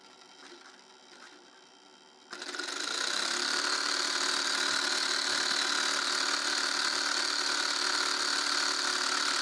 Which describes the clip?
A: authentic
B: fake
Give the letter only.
A